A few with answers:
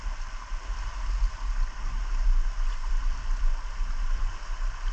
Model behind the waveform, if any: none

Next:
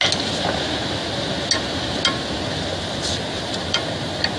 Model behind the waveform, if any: none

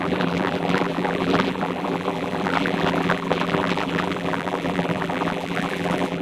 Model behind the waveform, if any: vocoder, BigVGAN v2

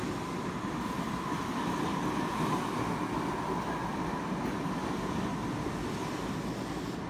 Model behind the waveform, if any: none